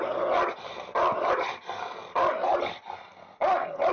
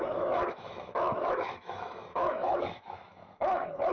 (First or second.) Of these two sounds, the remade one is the second